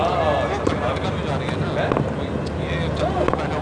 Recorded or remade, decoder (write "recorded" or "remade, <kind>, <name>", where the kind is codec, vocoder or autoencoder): recorded